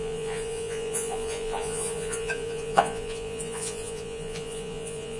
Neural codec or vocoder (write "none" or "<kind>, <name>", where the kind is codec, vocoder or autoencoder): vocoder, Vocos